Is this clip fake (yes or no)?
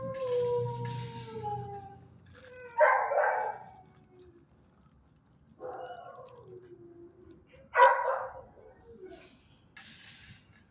no